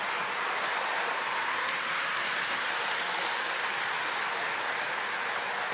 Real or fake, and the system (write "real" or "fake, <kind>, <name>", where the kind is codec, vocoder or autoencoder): real